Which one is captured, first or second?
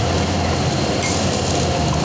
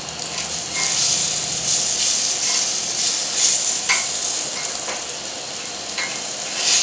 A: second